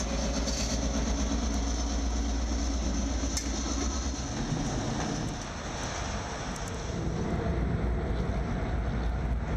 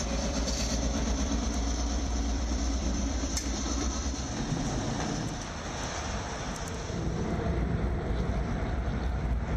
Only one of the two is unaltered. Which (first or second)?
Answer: first